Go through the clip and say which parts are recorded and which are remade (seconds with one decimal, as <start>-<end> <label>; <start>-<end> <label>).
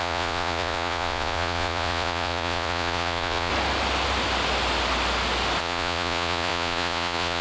0.0-3.5 remade; 3.5-5.6 recorded; 5.6-7.4 remade